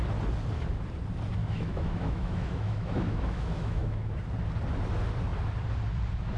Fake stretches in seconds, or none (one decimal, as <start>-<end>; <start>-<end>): 1.4-4.1